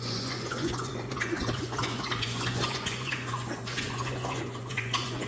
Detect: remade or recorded remade